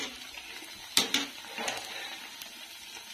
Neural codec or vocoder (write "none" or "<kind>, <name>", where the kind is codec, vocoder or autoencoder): none